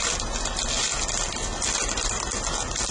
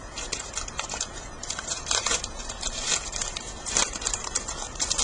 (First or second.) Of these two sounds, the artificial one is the second